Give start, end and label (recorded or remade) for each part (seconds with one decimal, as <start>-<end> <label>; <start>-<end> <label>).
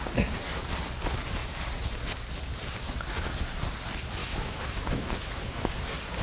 0.0-4.2 recorded; 4.2-5.7 remade; 5.7-6.2 recorded